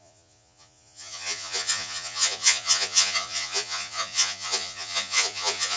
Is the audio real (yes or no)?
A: no